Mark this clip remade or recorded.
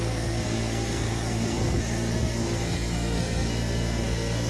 remade